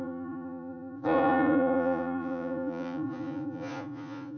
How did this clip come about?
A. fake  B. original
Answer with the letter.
A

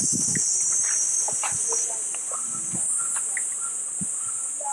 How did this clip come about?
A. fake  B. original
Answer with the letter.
B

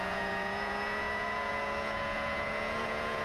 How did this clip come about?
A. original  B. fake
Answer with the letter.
B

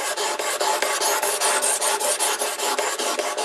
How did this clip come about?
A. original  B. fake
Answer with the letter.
A